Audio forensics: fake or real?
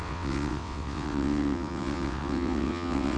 fake